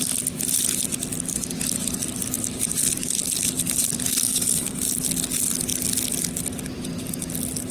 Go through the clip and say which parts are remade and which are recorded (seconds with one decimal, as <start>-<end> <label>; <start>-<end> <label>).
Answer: 0.0-4.1 recorded; 4.1-4.8 remade; 4.8-7.7 recorded